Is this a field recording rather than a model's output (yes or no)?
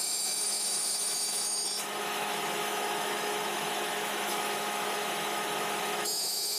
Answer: no